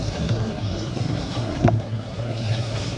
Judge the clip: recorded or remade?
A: remade